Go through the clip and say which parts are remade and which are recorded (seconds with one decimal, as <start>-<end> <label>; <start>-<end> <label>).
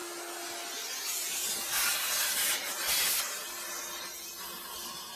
0.0-5.2 recorded